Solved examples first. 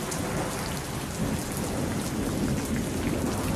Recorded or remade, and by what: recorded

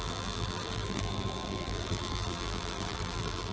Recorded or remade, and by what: remade, vocoder, BigVGAN v2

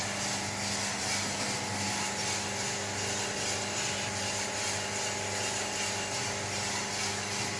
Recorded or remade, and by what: recorded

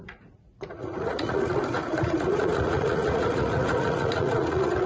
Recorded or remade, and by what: remade, vocoder, Vocos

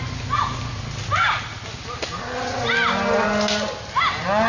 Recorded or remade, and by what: recorded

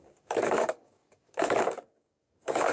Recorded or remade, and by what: remade, codec, DAC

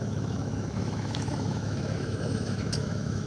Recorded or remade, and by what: remade, autoencoder, DAC-VAE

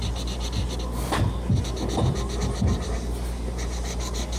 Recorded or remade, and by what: recorded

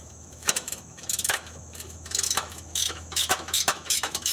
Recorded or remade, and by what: remade, autoencoder, DAC-VAE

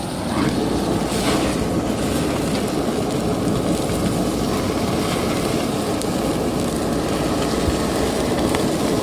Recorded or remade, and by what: recorded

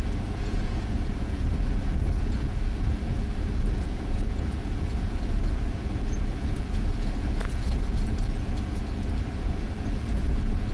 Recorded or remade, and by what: remade, vocoder, Vocos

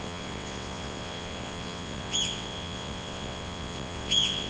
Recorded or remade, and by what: remade, vocoder, WaveNeXt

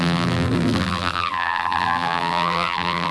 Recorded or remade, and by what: remade, vocoder, BigVGAN v2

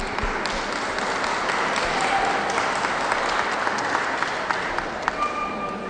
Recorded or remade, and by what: recorded